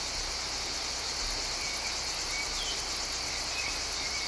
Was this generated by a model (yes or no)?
no